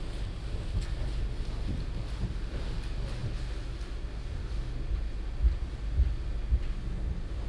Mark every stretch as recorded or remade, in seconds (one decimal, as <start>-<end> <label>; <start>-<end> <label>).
0.0-7.5 recorded